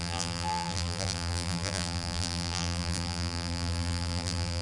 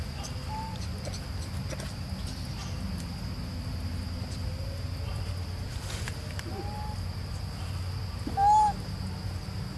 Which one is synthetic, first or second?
first